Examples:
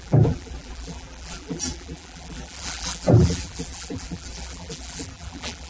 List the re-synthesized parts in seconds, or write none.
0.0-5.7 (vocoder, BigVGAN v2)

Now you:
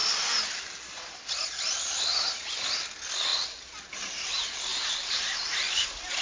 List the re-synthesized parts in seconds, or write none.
4.7-6.2 (vocoder, BigVGAN v2)

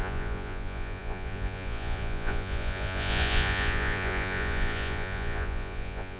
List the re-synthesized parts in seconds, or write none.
0.0-6.2 (vocoder, Vocos)

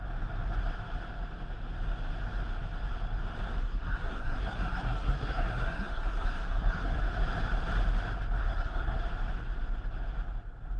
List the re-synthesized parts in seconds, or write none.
3.6-7.0 (codec, SNAC); 8.4-9.0

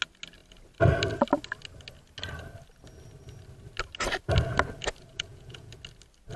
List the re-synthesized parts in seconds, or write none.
5.1-5.7 (vocoder, Vocos)